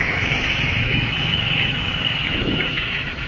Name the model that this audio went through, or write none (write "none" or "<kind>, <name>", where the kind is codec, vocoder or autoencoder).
autoencoder, DAC-VAE